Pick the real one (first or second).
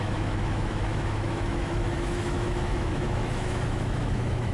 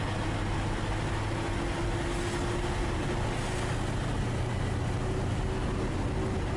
second